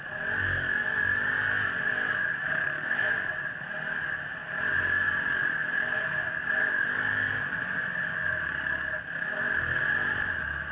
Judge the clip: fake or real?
real